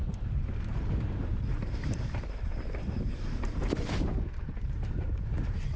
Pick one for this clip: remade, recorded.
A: remade